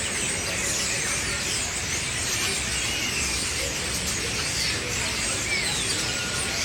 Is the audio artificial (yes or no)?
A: no